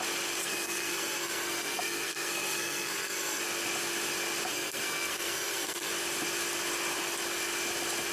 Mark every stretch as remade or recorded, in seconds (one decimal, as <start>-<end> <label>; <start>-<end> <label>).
0.0-0.4 recorded; 0.4-3.4 remade; 3.4-4.5 recorded; 4.5-5.9 remade; 5.9-8.1 recorded